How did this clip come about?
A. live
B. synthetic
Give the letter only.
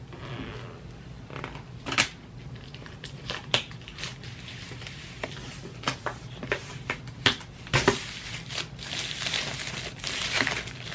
A